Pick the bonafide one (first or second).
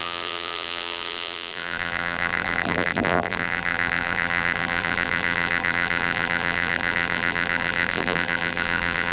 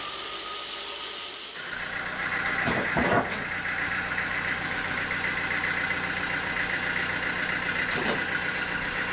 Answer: second